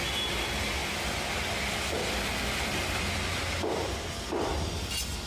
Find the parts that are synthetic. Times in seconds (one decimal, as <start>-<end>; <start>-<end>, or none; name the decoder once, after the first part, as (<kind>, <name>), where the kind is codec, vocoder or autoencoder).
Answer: 0.8-4.0 (vocoder, BigVGAN v2); 4.5-5.3